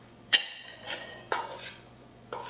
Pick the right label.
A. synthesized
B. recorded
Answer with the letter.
A